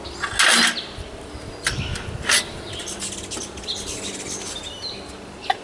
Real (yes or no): yes